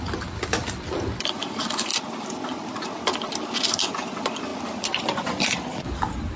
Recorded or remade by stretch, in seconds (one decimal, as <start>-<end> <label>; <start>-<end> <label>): 0.0-1.9 remade; 1.9-3.4 recorded; 3.4-6.4 remade